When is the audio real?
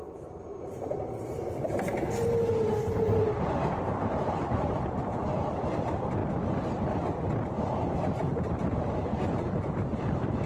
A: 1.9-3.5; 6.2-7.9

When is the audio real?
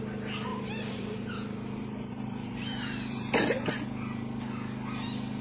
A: 0.0-0.5; 3.7-5.4